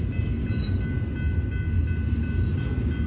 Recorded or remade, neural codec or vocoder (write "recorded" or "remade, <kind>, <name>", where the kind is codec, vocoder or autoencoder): recorded